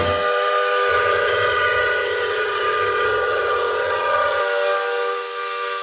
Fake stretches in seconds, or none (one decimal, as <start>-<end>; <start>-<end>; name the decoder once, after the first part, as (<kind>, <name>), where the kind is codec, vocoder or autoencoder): 0.9-4.4 (vocoder, HiFi-GAN)